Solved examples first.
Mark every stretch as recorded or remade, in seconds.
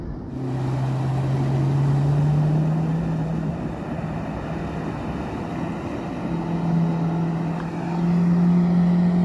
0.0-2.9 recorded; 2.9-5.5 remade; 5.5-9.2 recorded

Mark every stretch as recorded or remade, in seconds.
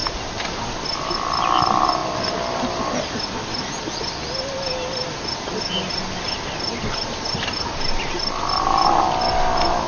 0.0-9.9 recorded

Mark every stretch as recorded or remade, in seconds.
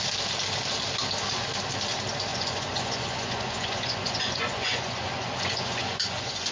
0.0-2.3 recorded; 2.3-6.5 remade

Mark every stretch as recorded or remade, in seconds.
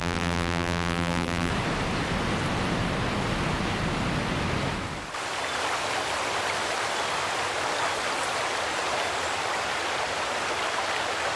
0.0-1.5 remade; 1.5-11.4 recorded